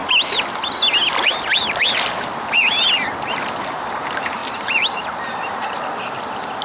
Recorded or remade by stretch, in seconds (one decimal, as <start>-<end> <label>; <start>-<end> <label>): 0.0-3.5 recorded; 3.5-6.6 remade